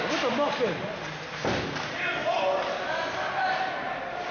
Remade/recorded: recorded